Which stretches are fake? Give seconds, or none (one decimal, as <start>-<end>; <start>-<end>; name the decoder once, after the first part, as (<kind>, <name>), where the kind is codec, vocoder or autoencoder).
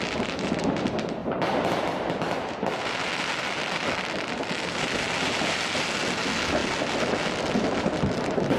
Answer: none